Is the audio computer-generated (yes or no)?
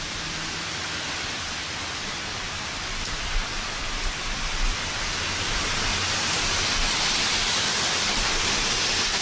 no